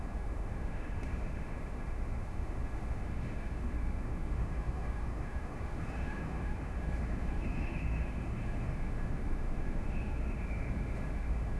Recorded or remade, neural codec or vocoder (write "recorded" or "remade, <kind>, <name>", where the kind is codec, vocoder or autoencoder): remade, autoencoder, DAC-VAE